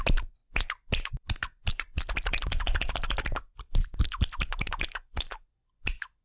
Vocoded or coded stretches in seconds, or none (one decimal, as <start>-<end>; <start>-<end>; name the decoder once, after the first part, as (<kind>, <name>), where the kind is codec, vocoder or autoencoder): 1.7-5.4 (vocoder, BigVGAN v2)